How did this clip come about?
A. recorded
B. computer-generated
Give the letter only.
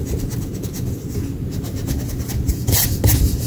A